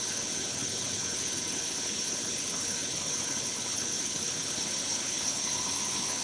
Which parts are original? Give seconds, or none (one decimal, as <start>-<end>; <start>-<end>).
none